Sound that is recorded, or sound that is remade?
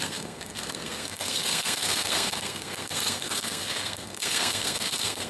remade